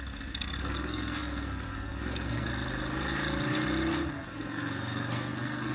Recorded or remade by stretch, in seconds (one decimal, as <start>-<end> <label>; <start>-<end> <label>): 0.0-2.5 remade; 2.5-4.1 recorded; 4.1-5.7 remade